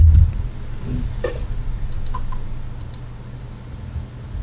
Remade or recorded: recorded